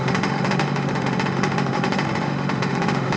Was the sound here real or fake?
fake